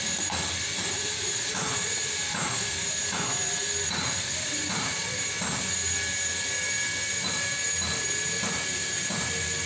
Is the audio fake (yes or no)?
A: yes